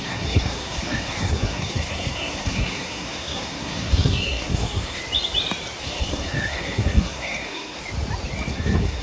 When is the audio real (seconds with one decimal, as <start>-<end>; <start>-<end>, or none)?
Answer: 5.0-5.8; 7.8-8.5